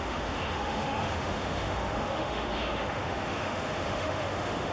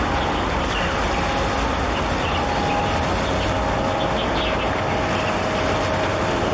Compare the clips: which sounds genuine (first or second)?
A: second